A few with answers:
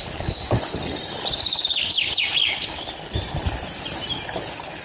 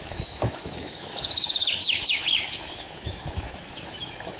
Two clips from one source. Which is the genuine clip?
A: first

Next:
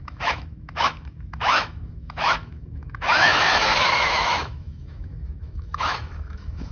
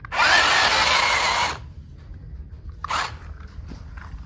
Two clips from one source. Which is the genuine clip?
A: second